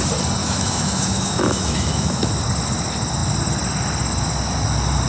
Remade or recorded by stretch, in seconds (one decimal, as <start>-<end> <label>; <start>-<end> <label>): 0.0-0.4 recorded; 0.4-2.3 remade; 2.3-5.1 recorded